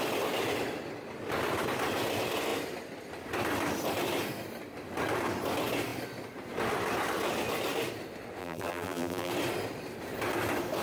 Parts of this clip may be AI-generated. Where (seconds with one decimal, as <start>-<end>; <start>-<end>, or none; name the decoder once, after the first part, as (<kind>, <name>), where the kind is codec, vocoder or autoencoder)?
8.4-9.3 (vocoder, BigVGAN v2)